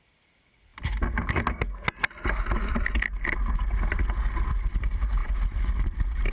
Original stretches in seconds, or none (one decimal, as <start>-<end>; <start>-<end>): 0.7-4.5; 5.2-6.3